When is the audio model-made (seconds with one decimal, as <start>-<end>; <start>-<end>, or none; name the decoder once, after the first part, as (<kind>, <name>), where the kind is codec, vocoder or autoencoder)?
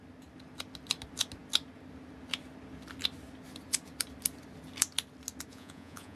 5.5-6.2 (vocoder, Vocos)